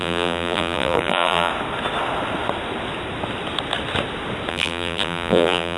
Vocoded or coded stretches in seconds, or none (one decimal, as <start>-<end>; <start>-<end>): 0.0-1.5; 4.5-5.8